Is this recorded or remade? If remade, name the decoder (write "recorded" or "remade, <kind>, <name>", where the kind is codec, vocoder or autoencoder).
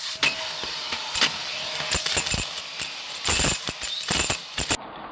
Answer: recorded